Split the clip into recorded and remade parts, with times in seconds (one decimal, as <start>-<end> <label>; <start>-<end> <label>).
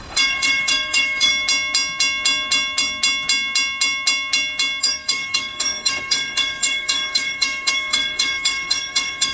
0.0-1.3 remade; 1.3-4.8 recorded; 4.8-9.3 remade